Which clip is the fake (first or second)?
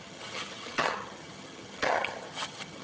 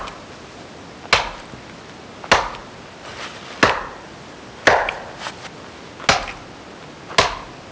first